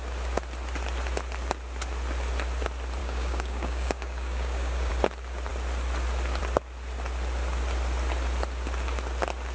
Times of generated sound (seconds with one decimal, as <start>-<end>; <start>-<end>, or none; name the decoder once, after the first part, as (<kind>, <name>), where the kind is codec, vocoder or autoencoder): 3.0-4.9 (codec, DAC)